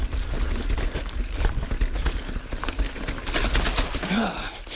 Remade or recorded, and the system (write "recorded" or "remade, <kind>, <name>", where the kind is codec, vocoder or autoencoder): recorded